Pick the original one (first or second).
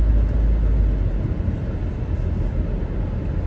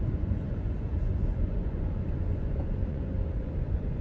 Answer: first